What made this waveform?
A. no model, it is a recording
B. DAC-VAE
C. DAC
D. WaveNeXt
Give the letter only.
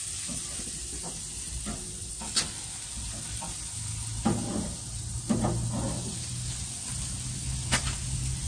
A